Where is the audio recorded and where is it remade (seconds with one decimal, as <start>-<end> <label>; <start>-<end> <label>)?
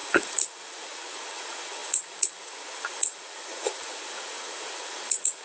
0.0-5.4 remade